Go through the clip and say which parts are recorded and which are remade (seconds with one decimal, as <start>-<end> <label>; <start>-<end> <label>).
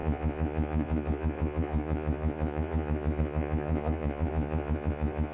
0.0-5.3 remade